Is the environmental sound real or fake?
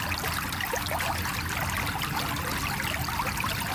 real